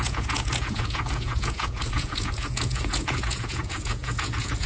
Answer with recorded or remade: remade